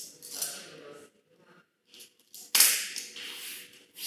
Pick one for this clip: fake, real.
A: real